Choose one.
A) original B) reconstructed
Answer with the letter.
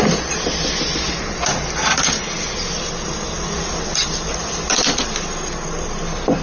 A